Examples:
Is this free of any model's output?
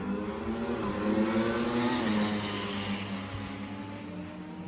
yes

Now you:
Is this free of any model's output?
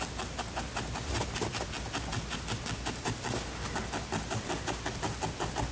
yes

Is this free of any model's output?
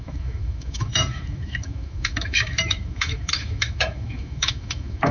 no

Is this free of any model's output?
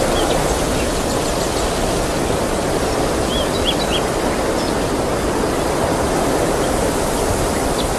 yes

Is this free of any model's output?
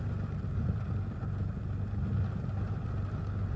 yes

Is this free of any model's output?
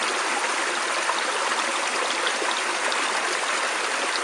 yes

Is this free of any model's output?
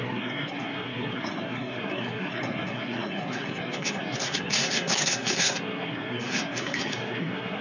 no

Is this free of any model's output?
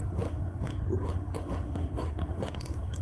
no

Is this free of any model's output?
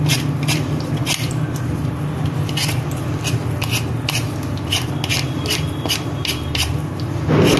yes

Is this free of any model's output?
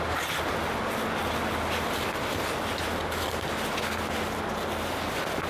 yes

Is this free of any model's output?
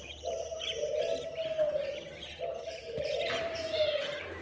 no